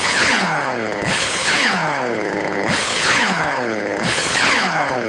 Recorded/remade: remade